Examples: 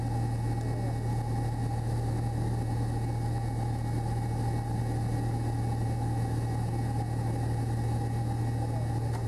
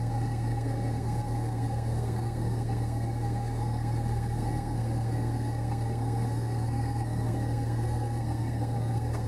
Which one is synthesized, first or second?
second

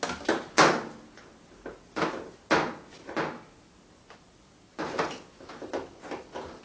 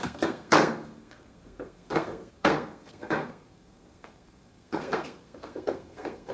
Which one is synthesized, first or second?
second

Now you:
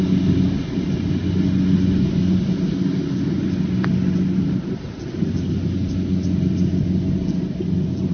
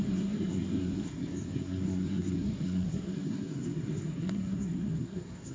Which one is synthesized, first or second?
second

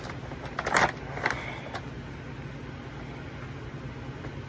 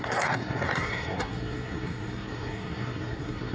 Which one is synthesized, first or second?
second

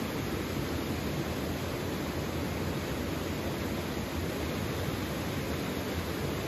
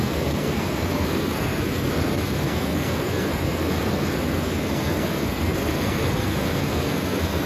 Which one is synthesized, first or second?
second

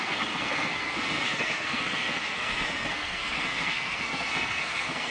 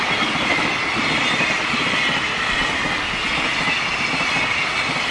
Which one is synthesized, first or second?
first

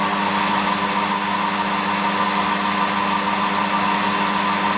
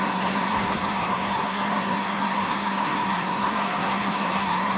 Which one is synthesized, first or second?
second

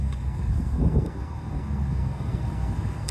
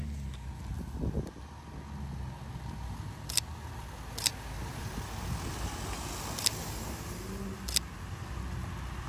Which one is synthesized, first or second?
first